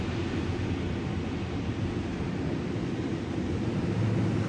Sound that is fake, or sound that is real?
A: real